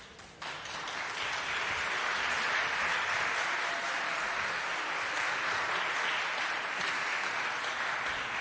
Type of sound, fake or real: real